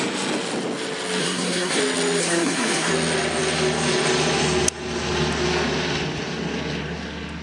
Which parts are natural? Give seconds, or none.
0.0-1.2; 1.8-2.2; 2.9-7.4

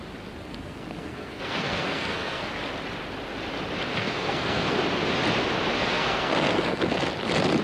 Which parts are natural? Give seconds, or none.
0.0-0.4; 2.5-3.9; 4.8-5.8; 7.1-7.6

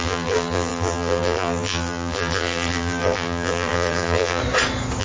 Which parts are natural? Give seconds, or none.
4.4-5.0

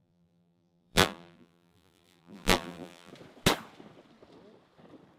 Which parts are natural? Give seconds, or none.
3.1-5.2

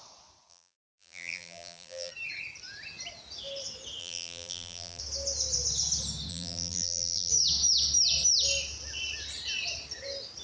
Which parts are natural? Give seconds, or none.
0.0-0.5; 2.1-4.0; 5.0-6.3; 7.3-10.4